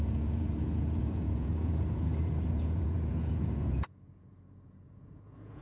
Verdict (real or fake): fake